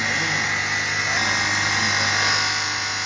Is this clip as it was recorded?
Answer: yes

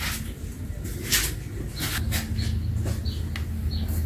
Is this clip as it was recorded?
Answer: yes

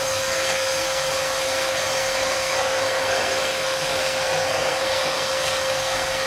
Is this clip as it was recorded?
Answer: no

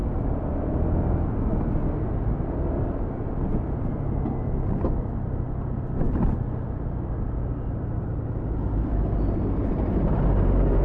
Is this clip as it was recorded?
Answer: yes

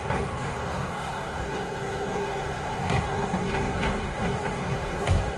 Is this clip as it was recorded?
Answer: no